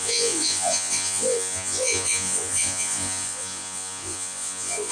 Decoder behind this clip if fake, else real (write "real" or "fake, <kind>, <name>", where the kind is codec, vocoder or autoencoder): fake, vocoder, Vocos